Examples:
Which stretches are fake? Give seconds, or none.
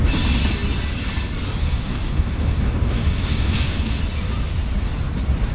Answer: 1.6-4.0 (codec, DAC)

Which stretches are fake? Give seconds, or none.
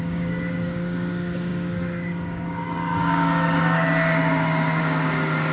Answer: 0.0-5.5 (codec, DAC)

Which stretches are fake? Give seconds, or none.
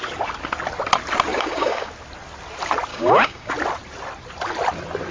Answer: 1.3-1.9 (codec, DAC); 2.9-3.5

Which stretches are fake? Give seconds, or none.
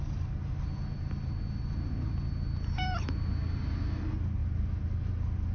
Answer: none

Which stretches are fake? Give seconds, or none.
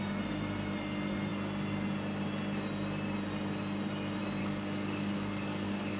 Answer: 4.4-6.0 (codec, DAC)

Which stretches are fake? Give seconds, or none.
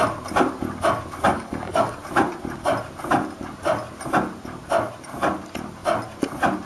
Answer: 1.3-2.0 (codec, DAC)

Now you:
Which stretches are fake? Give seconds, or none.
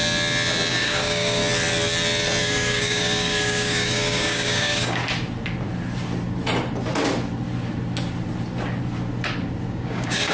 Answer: 0.8-1.4 (codec, DAC); 2.4-5.0; 9.7-10.3